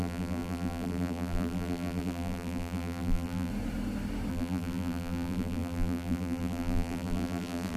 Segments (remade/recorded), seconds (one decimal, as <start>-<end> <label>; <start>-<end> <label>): 0.0-3.5 remade; 3.5-4.3 recorded; 4.3-7.8 remade